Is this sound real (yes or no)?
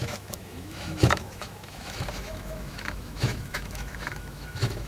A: no